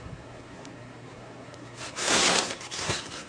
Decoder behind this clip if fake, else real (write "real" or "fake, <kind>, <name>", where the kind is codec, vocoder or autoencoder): fake, codec, SNAC